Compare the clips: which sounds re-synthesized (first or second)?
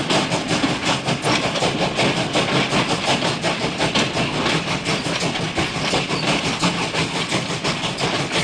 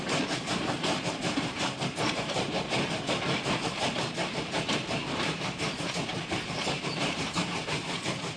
second